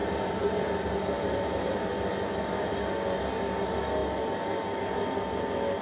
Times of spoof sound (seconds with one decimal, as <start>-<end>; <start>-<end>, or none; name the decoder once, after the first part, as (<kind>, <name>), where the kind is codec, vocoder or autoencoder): 0.0-1.9 (vocoder, BigVGAN v2)